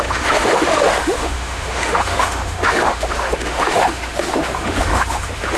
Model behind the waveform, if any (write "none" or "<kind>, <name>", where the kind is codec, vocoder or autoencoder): autoencoder, DAC-VAE